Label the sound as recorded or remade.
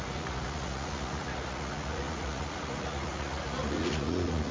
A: remade